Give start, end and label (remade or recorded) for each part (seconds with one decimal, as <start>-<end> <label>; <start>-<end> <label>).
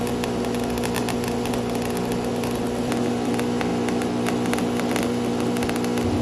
0.0-6.2 recorded